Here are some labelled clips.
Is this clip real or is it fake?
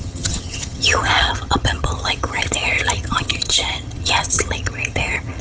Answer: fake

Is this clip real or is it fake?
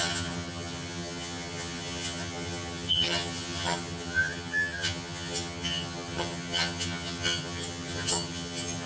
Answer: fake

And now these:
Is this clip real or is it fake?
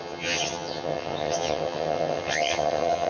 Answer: fake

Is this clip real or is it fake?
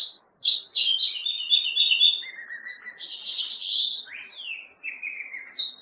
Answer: real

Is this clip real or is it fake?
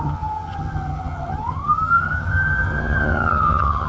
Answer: fake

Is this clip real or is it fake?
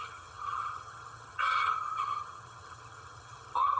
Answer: fake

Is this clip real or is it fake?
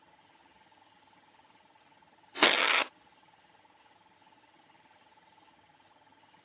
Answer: fake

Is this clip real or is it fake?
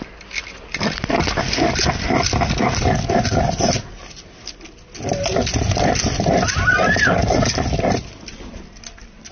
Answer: real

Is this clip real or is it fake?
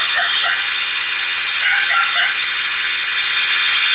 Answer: fake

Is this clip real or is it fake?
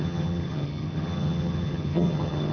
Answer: fake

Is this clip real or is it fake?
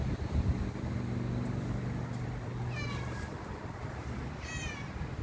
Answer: real